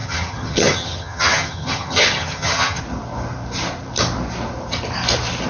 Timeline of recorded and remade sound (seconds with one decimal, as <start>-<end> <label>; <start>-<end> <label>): 0.0-2.8 remade; 2.8-5.5 recorded